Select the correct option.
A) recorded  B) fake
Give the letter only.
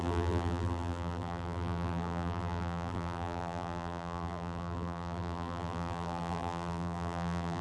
B